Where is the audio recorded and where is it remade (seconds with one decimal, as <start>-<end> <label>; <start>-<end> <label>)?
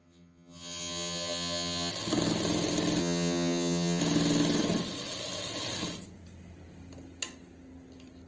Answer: 0.0-1.9 remade; 1.9-3.0 recorded; 3.0-4.0 remade; 4.0-8.3 recorded